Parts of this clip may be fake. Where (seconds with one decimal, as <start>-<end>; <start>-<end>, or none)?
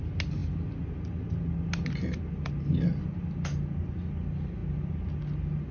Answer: none